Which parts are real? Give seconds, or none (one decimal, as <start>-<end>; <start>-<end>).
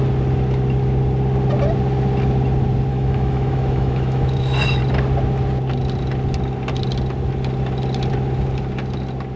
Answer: 0.0-2.9; 4.8-9.4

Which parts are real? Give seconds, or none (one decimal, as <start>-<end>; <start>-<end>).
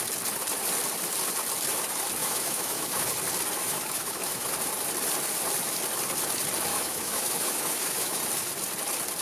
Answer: 0.0-2.2; 3.1-3.6; 4.5-6.7; 8.2-9.2